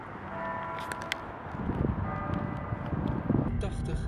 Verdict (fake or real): real